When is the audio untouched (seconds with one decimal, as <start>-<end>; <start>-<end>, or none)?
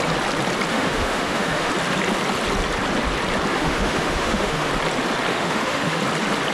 0.0-0.7; 1.7-3.5; 4.7-5.3; 6.0-6.5